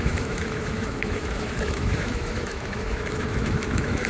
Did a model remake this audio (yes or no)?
yes